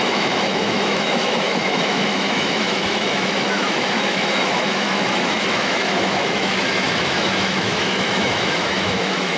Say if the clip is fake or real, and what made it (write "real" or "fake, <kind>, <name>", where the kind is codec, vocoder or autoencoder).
fake, autoencoder, DAC-VAE